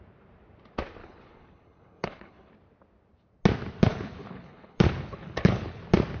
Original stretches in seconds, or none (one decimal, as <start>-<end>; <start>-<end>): 0.0-1.0; 2.5-3.9; 5.8-6.2